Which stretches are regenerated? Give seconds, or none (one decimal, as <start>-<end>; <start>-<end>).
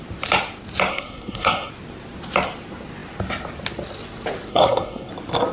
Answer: 0.9-1.7; 4.5-5.1